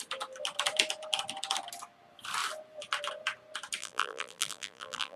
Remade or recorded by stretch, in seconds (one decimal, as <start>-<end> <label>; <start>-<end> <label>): 0.0-3.8 recorded; 3.8-5.2 remade